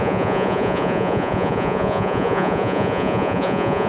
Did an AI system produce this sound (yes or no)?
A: yes